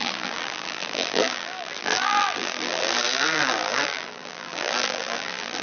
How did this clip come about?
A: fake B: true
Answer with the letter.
A